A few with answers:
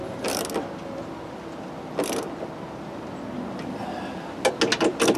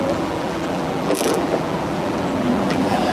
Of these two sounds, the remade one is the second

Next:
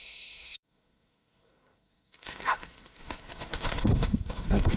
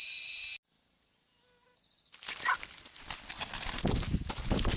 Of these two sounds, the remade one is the first